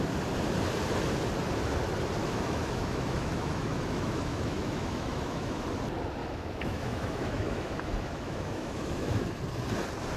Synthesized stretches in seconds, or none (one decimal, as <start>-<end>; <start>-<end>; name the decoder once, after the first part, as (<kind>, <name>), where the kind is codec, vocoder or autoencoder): 2.2-5.6 (autoencoder, DAC-VAE); 6.2-9.4